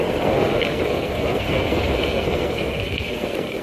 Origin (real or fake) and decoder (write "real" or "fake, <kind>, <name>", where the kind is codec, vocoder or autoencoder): fake, codec, SNAC